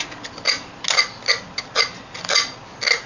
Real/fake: real